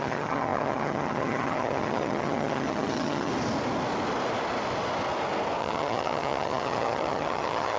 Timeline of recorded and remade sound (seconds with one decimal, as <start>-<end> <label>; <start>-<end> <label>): 0.0-3.3 remade; 3.3-5.6 recorded; 5.6-7.8 remade